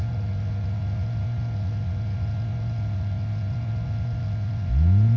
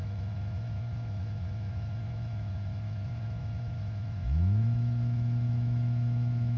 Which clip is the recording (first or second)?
first